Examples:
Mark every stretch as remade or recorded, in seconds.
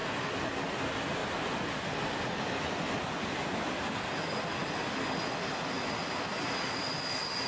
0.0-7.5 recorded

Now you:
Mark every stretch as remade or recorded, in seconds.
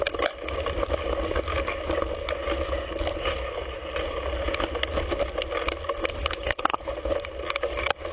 0.0-6.2 recorded; 6.2-6.9 remade; 6.9-8.1 recorded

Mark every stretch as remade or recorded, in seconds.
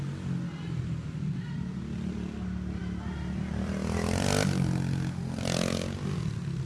0.0-6.7 recorded